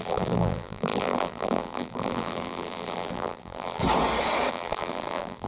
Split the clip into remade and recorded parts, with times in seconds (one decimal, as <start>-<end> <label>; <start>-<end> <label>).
0.0-3.8 remade; 3.8-4.5 recorded; 4.5-5.5 remade